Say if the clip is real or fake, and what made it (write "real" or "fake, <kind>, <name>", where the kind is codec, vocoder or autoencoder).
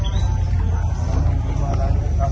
real